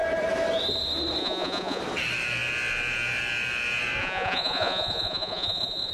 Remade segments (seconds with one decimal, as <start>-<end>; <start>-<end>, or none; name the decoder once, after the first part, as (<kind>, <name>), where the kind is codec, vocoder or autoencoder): 1.2-1.8 (vocoder, Vocos); 4.0-5.9